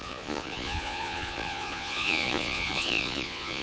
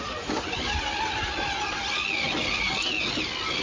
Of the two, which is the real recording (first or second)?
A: second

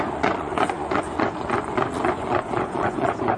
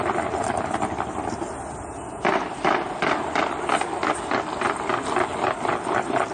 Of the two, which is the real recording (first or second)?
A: second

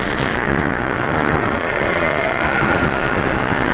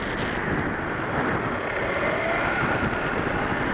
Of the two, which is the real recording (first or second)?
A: second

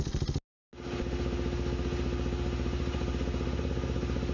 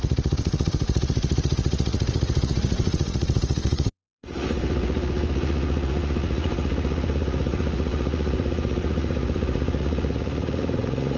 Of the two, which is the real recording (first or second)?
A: first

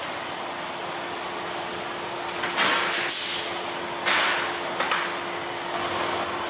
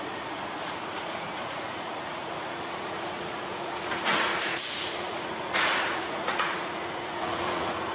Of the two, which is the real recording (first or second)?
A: first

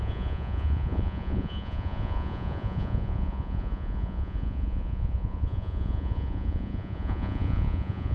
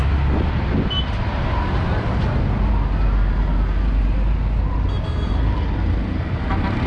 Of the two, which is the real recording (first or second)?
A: second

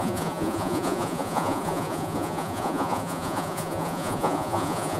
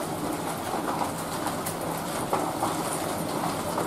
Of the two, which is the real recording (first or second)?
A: second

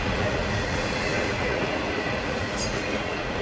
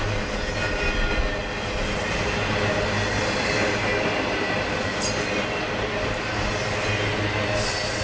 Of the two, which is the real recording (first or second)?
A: second